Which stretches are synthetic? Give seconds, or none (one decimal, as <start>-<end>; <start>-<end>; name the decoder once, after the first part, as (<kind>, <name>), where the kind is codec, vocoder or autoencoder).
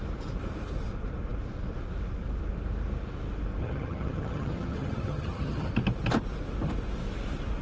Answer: 3.6-5.7 (vocoder, HiFi-GAN)